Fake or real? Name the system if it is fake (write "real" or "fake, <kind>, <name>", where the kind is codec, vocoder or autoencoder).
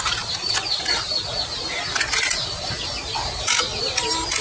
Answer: real